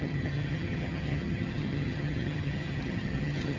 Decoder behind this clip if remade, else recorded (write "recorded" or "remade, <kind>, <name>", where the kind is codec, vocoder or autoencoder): remade, vocoder, HiFi-GAN